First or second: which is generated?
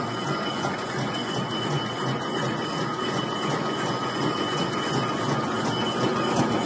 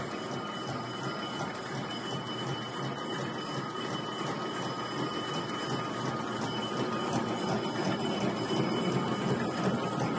first